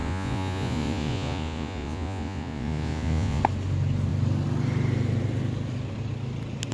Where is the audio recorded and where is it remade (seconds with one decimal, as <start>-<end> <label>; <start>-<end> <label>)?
0.0-3.4 remade; 3.4-6.7 recorded